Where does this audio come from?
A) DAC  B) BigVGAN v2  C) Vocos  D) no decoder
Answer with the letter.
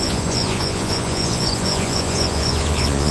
C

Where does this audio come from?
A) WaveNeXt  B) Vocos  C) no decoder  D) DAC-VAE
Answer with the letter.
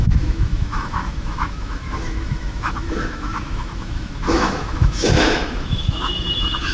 D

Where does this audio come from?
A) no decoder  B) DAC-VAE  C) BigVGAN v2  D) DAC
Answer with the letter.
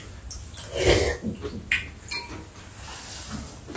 A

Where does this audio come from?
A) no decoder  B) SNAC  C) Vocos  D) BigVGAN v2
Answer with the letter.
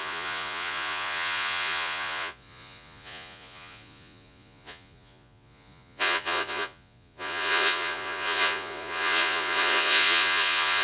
C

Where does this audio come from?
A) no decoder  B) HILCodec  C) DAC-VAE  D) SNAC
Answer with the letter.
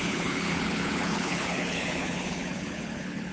B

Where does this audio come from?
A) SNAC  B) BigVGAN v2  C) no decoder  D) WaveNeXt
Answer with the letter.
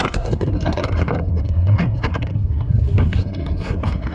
A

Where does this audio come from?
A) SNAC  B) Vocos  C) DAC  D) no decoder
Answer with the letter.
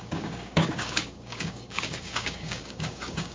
C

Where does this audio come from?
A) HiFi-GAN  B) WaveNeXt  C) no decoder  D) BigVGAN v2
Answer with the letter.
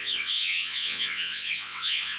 B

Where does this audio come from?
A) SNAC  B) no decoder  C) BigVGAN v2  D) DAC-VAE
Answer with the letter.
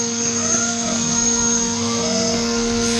A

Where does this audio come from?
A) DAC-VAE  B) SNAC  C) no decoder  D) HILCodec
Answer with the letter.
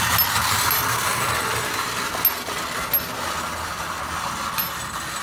C